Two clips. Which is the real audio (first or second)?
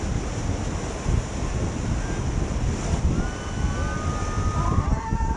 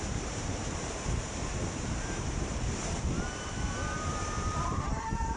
first